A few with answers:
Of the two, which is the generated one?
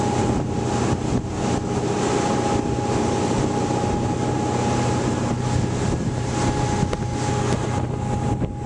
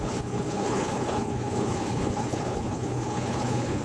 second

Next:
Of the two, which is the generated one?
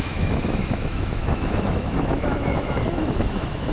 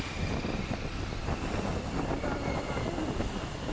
first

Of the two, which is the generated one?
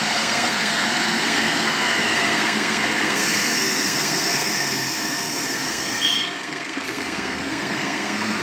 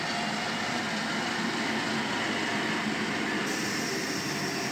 first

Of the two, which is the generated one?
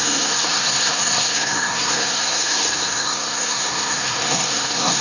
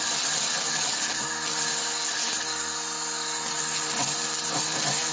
first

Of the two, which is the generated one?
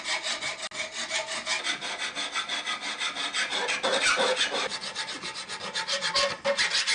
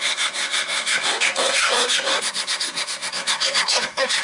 second